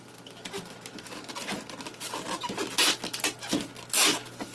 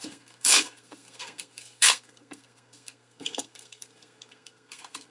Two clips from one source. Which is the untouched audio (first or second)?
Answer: first